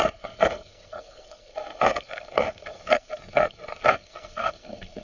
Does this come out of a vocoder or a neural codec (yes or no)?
yes